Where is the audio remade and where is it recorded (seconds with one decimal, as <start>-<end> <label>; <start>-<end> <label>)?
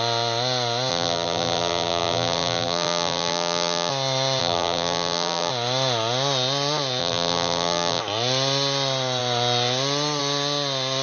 0.0-0.9 recorded; 0.9-3.9 remade; 3.9-4.4 recorded; 4.4-5.5 remade; 5.5-7.0 recorded; 7.0-8.0 remade; 8.0-11.0 recorded